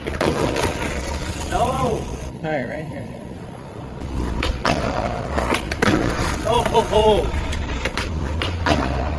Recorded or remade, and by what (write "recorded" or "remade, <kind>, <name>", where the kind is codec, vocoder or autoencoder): remade, vocoder, Vocos